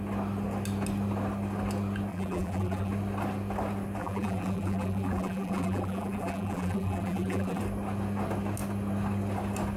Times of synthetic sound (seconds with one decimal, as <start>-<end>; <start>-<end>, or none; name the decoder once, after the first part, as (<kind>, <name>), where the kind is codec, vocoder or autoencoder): 2.1-2.9 (vocoder, BigVGAN v2); 4.0-7.6

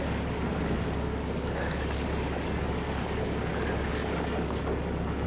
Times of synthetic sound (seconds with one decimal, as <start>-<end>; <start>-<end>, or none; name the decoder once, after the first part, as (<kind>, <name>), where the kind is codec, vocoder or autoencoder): 0.0-5.3 (codec, DAC)